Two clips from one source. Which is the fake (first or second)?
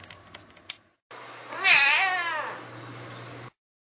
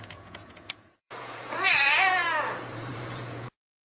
second